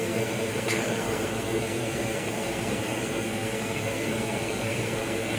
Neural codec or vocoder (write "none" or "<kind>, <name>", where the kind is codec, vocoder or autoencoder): codec, SNAC